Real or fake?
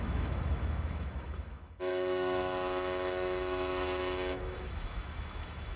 fake